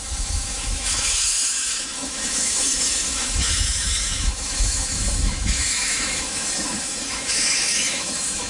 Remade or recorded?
remade